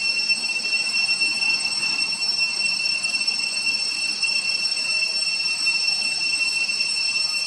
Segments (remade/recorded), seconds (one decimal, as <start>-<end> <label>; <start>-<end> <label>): 0.0-1.3 recorded; 1.3-2.0 remade; 2.0-2.5 recorded; 2.5-5.1 remade; 5.1-7.5 recorded